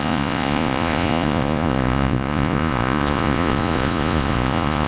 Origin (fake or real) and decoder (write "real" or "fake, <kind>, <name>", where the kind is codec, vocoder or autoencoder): fake, vocoder, Vocos